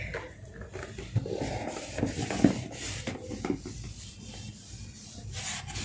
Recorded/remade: recorded